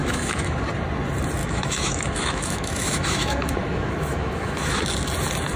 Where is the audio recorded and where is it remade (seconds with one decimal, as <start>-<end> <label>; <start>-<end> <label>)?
0.0-0.6 remade; 0.6-1.4 recorded; 1.4-4.8 remade; 4.8-5.6 recorded